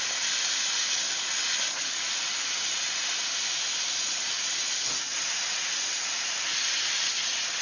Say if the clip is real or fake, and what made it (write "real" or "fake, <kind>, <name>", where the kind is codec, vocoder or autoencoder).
real